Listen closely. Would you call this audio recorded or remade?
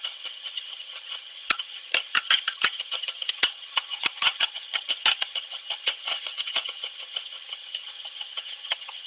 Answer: remade